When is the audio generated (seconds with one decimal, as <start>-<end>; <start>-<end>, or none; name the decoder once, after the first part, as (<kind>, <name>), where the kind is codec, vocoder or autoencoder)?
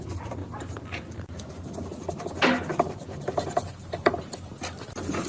2.7-4.5 (vocoder, BigVGAN v2)